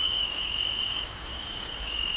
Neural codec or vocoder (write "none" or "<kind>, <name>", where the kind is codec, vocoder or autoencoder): codec, DAC